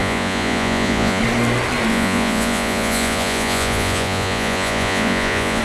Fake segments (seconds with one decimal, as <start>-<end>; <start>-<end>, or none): 0.0-1.2; 1.9-5.6